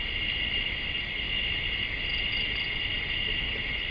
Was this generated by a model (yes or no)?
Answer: no